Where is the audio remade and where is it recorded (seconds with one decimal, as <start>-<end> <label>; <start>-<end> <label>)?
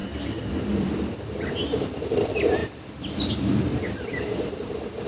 0.0-4.1 recorded; 4.1-4.6 remade; 4.6-5.1 recorded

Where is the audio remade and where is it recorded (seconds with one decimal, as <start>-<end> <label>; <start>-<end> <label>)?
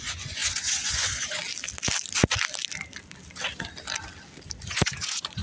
0.0-1.4 remade; 1.4-4.6 recorded; 4.6-5.4 remade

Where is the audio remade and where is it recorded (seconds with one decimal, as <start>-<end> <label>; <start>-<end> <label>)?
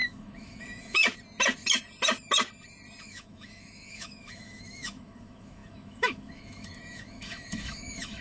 0.0-1.0 remade; 1.0-3.0 recorded; 3.0-8.2 remade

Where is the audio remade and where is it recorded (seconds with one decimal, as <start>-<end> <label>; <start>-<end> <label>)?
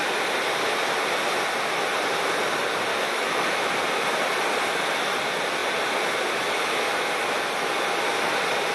0.0-2.9 recorded; 2.9-3.7 remade; 3.7-8.7 recorded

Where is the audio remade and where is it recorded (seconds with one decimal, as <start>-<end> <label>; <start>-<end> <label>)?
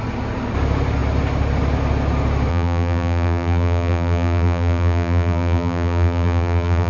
0.0-2.5 recorded; 2.5-6.9 remade